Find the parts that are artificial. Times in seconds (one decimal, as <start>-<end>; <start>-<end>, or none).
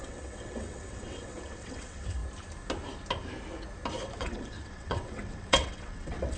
0.0-2.2; 4.2-6.4